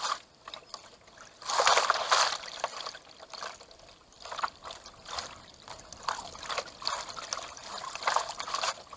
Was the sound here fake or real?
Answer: real